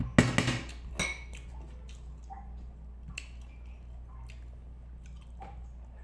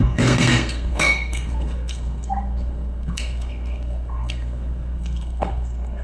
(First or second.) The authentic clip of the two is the first